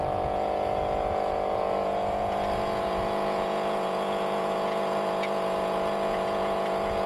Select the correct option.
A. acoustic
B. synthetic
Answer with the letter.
B